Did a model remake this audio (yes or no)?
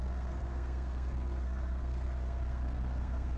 yes